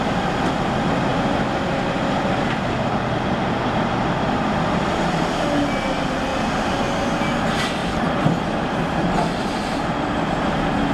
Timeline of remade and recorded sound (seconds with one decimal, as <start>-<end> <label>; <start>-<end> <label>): 0.0-6.3 recorded; 6.3-6.8 remade; 6.8-7.8 recorded; 7.8-9.1 remade; 9.1-10.9 recorded